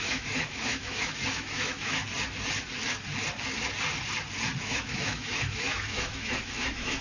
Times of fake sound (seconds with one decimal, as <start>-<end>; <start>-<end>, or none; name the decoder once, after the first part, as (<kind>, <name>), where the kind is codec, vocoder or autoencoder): 0.0-2.0 (autoencoder, DAC-VAE); 4.6-7.0